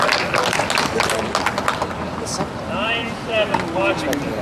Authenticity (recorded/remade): recorded